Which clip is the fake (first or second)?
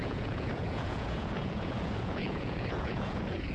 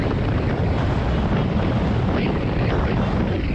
first